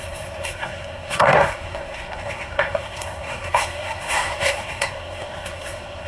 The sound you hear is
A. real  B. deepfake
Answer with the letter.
B